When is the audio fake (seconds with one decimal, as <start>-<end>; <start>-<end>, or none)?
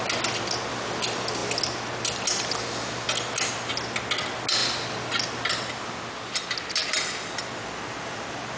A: none